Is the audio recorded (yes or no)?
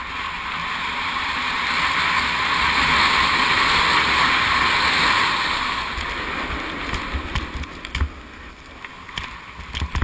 yes